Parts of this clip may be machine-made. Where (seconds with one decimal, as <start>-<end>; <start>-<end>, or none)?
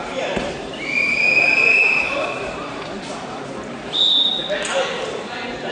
0.0-3.4; 5.0-5.7